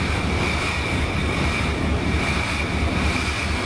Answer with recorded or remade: recorded